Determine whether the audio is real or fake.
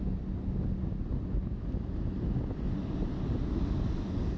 real